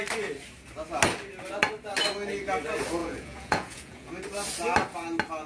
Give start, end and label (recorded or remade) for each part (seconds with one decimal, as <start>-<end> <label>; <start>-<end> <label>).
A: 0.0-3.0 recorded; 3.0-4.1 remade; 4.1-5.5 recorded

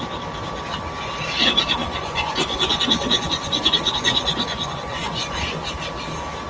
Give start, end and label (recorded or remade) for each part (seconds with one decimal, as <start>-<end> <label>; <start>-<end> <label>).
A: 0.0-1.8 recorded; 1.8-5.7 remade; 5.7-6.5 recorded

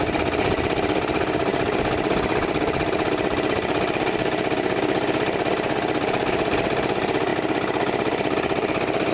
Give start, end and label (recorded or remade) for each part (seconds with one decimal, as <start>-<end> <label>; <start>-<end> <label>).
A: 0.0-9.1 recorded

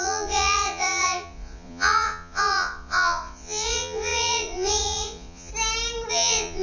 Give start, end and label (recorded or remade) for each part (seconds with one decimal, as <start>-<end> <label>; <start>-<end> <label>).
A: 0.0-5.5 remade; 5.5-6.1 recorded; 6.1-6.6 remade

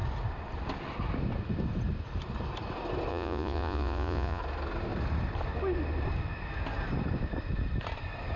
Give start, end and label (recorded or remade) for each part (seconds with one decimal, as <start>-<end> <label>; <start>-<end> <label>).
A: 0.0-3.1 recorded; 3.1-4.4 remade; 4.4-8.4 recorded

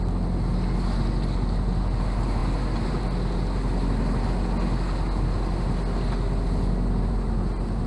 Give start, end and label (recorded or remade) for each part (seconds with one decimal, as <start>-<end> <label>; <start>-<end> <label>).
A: 0.0-7.9 recorded

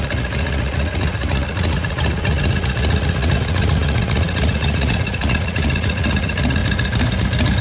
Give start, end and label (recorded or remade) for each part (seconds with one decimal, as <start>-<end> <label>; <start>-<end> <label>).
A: 0.0-6.6 remade; 6.6-7.6 recorded

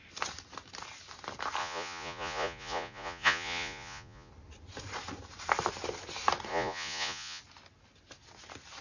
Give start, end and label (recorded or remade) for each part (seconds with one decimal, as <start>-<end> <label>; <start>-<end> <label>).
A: 0.0-1.6 recorded; 1.6-4.3 remade; 4.3-6.5 recorded; 6.5-7.4 remade; 7.4-8.8 recorded